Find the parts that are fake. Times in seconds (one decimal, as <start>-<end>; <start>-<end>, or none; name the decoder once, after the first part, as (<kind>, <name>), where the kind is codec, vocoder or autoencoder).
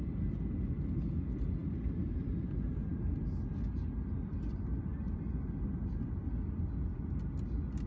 none